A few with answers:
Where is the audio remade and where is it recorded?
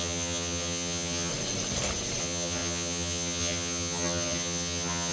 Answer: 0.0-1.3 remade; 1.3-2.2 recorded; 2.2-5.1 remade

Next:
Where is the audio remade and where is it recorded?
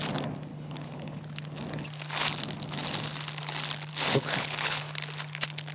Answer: 0.0-0.5 recorded; 0.5-1.2 remade; 1.2-3.9 recorded; 3.9-4.8 remade; 4.8-5.7 recorded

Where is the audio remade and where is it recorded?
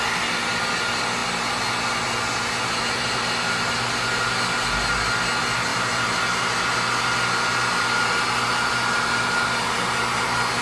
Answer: 0.0-10.6 recorded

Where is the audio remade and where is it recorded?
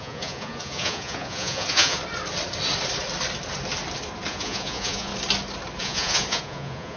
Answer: 0.0-2.0 remade; 2.0-4.3 recorded; 4.3-5.1 remade; 5.1-5.8 recorded; 5.8-7.0 remade